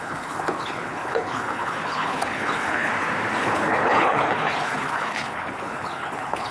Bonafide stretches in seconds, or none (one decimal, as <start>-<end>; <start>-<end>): 2.9-3.4